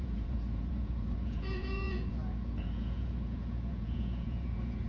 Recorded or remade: remade